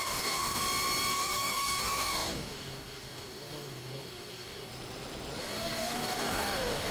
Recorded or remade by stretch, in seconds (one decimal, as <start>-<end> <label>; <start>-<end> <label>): 0.0-0.6 remade; 0.6-1.1 recorded; 1.1-4.7 remade; 4.7-5.4 recorded; 5.4-6.9 remade